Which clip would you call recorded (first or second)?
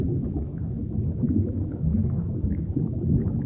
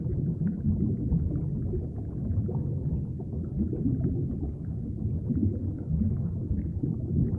second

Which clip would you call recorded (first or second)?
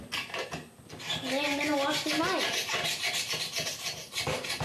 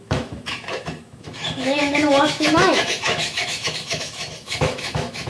first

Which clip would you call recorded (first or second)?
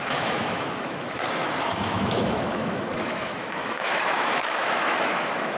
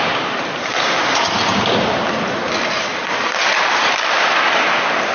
second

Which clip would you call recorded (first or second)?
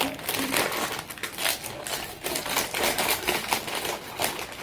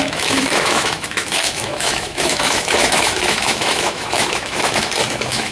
first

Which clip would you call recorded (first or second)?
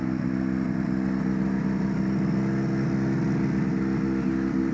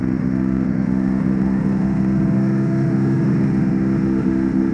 first